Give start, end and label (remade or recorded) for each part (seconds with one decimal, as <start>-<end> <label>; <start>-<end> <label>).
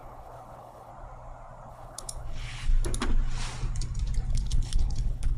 0.0-0.9 remade; 0.9-1.7 recorded; 1.7-2.7 remade; 2.7-4.3 recorded; 4.3-5.4 remade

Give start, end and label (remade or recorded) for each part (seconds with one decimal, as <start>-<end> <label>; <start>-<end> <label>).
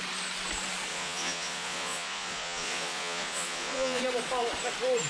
0.0-0.9 recorded; 0.9-4.0 remade; 4.0-5.1 recorded